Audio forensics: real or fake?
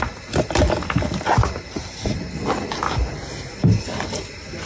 real